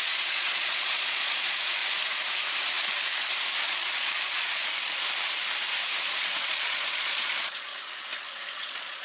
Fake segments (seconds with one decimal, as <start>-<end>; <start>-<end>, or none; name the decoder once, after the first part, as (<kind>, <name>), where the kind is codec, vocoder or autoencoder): 0.0-1.8 (vocoder, Vocos); 3.6-4.6; 6.1-7.7; 8.3-9.0